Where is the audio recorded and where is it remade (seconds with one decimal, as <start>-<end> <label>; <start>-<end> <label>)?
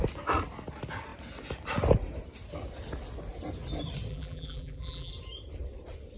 0.0-4.1 recorded; 4.1-5.1 remade; 5.1-6.2 recorded